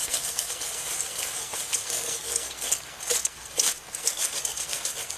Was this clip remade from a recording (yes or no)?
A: yes